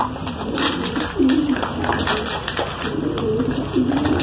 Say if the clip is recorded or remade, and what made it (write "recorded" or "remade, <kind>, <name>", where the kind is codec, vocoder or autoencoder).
recorded